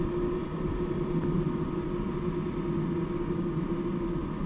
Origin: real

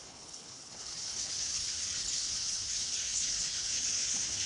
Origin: fake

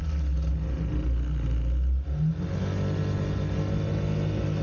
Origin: real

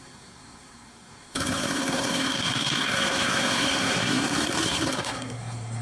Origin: fake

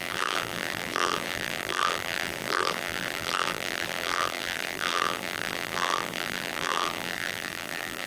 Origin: fake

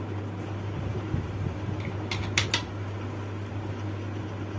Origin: real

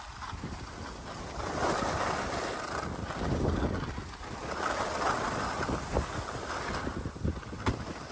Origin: real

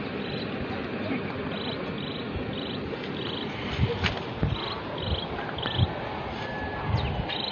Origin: real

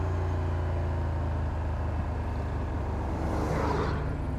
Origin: real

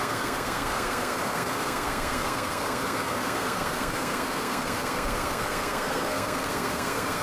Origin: fake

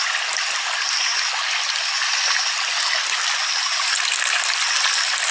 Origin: real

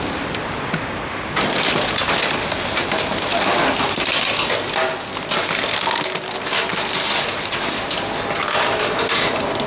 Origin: real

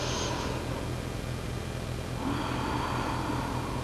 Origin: real